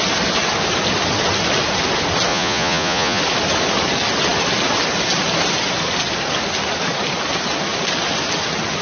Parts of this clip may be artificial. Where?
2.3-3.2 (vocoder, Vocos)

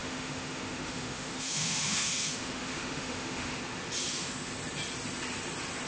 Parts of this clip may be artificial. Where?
0.0-3.6 (autoencoder, DAC-VAE); 4.1-4.5

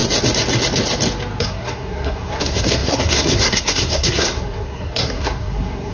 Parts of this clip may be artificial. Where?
1.4-5.9 (codec, SNAC)

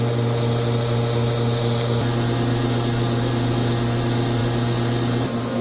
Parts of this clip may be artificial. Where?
none

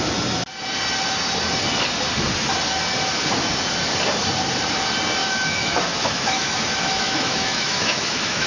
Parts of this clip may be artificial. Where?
5.2-8.5 (autoencoder, DAC-VAE)

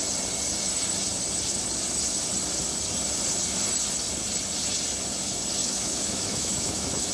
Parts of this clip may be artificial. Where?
5.6-7.1 (autoencoder, DAC-VAE)

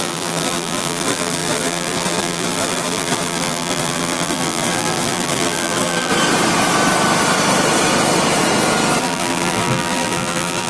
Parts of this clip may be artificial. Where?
0.0-6.1 (vocoder, BigVGAN v2); 9.0-10.7

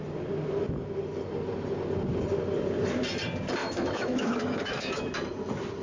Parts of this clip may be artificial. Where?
3.6-5.1 (autoencoder, DAC-VAE)